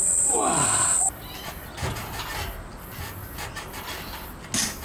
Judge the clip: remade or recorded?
recorded